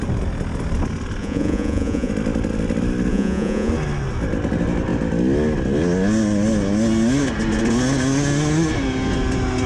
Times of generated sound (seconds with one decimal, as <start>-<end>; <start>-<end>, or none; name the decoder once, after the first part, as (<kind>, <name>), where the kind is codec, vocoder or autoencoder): 1.2-2.1 (vocoder, Vocos); 3.1-3.7